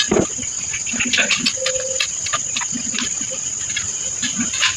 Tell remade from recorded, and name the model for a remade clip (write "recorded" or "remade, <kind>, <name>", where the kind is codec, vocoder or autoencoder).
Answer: recorded